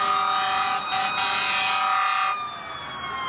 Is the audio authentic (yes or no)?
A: yes